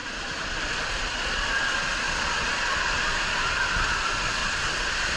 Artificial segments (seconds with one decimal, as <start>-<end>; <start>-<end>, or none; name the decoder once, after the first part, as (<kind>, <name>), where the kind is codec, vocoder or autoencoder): 0.0-3.1 (vocoder, Vocos); 4.4-5.2